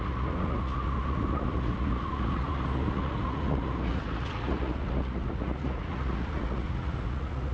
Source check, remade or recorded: remade